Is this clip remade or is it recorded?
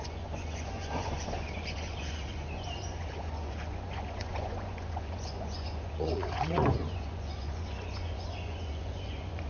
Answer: remade